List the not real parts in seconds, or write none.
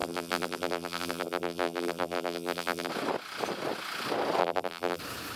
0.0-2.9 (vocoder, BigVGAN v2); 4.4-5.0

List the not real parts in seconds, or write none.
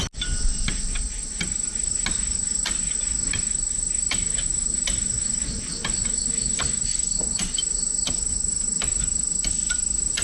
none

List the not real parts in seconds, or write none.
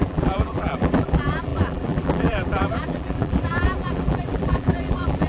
0.0-5.3 (vocoder, BigVGAN v2)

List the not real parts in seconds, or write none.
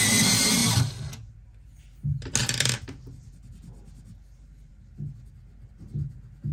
2.4-3.3 (vocoder, BigVGAN v2)